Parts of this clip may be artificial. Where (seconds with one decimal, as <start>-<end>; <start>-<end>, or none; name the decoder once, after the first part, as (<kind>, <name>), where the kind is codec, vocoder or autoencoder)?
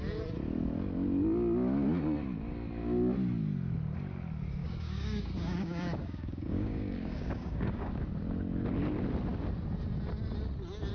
4.6-8.0 (codec, DAC)